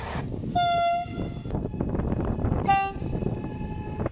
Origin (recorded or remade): recorded